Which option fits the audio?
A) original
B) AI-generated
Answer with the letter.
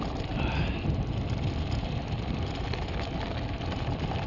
A